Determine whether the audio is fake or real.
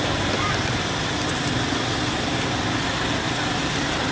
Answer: real